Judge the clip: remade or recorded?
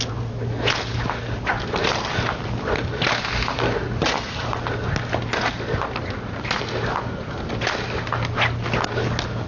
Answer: recorded